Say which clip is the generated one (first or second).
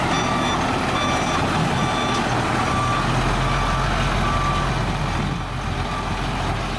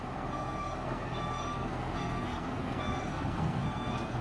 second